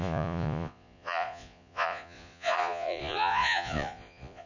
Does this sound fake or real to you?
fake